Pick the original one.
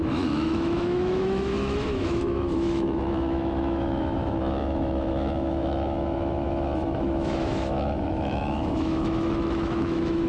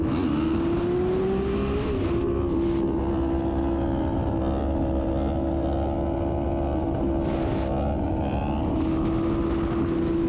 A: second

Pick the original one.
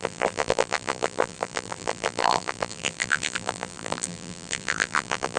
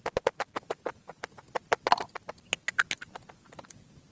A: second